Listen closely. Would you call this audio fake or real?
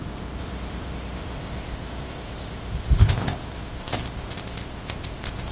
fake